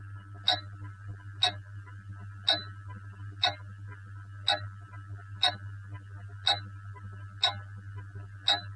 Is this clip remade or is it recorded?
recorded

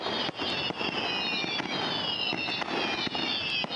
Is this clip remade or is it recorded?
recorded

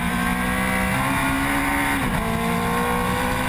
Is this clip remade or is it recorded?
recorded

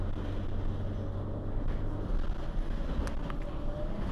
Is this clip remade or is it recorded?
recorded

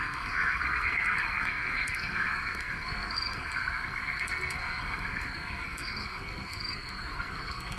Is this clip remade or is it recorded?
remade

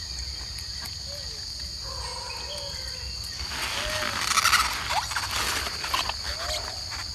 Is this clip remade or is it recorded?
recorded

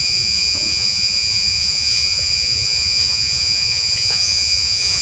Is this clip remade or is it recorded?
remade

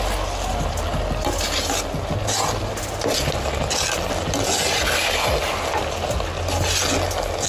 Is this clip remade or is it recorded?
recorded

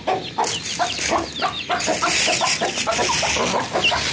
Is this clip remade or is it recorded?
recorded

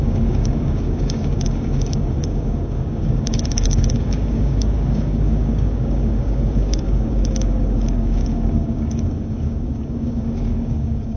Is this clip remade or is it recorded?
remade